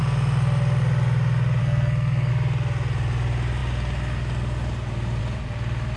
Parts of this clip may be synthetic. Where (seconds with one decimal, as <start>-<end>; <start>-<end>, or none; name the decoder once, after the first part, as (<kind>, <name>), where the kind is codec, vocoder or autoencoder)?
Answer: 1.6-2.3 (codec, SNAC)